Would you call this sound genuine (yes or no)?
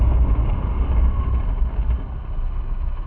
yes